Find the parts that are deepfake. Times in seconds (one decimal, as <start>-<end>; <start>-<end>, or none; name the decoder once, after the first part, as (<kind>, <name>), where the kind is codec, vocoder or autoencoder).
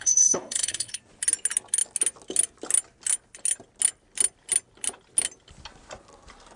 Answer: 0.0-1.0 (codec, HILCodec)